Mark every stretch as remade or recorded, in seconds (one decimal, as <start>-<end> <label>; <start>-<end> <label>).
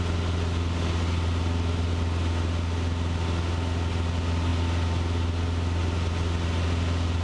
0.0-7.2 recorded